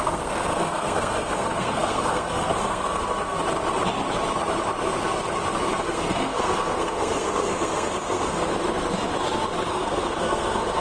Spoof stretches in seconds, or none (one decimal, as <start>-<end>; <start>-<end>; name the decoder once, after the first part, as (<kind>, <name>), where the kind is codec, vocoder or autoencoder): 0.0-3.4 (codec, SNAC); 5.8-8.5; 9.7-10.8